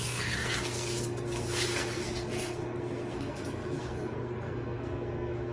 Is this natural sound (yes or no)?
no